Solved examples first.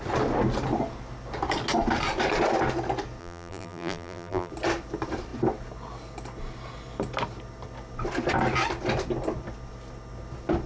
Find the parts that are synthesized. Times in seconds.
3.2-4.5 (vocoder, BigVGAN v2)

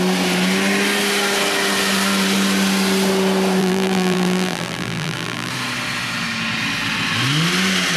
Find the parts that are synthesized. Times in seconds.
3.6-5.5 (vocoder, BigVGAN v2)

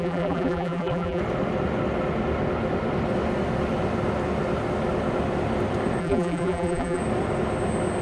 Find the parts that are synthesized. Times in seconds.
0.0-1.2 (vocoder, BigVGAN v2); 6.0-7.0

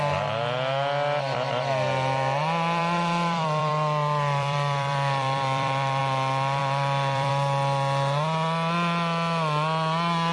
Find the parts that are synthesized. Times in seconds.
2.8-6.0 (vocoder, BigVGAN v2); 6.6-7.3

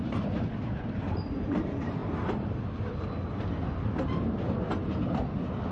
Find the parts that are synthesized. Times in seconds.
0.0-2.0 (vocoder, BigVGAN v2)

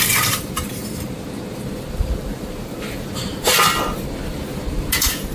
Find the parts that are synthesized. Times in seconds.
0.0-0.8 (vocoder, BigVGAN v2); 1.9-3.3; 4.7-5.3